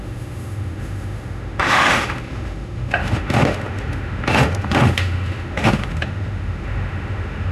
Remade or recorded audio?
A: remade